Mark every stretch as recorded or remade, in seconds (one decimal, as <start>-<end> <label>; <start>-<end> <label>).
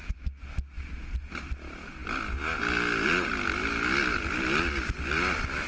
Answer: 0.0-5.7 recorded